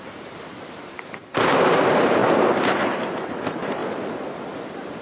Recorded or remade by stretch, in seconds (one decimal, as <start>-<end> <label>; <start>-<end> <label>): 0.0-2.2 remade; 2.2-2.7 recorded; 2.7-3.8 remade; 3.8-5.0 recorded